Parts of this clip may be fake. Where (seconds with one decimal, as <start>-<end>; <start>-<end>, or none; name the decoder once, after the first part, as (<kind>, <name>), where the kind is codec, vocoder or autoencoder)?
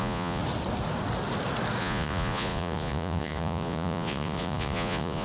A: 0.0-0.4 (vocoder, Vocos); 1.8-5.2